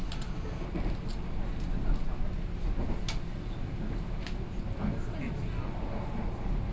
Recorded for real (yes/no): yes